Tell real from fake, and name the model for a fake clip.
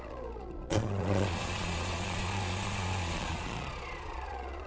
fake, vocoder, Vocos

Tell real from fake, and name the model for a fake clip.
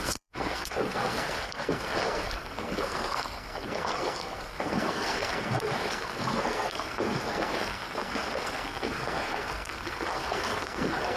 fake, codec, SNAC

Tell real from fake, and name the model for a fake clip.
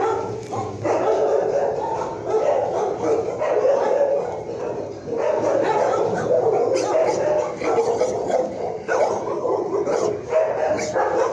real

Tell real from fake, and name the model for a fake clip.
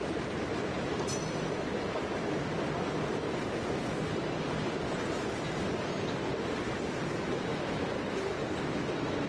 real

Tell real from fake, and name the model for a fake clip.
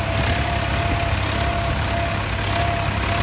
real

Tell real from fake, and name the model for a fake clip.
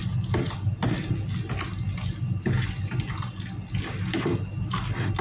real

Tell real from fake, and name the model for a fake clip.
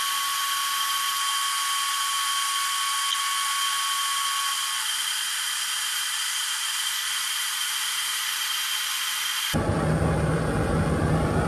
real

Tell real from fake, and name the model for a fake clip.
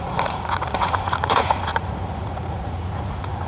fake, vocoder, Vocos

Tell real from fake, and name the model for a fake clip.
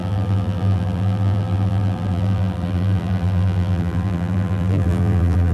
fake, vocoder, BigVGAN v2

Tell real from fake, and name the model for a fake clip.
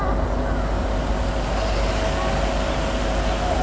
real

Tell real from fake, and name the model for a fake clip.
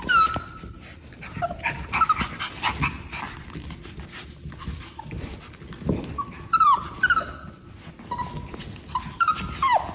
real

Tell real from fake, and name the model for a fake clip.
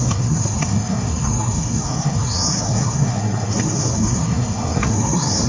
fake, codec, SNAC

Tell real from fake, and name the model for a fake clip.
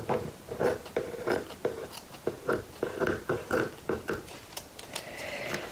fake, vocoder, BigVGAN v2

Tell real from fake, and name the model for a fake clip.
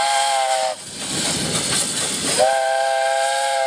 real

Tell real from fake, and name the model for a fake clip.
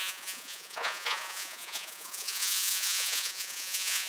fake, vocoder, Vocos